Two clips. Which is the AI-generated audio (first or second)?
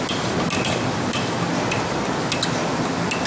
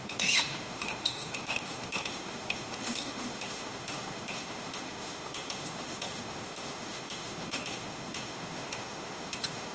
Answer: second